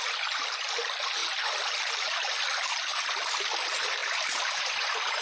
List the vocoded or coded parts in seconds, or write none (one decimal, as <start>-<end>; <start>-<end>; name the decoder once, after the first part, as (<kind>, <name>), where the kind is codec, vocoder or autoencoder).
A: 1.2-2.1 (vocoder, BigVGAN v2); 2.9-3.4